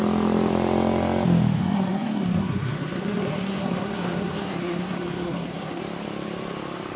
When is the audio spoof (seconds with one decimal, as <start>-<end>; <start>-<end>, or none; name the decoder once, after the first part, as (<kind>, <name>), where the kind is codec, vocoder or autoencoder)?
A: 1.6-5.8 (codec, SNAC)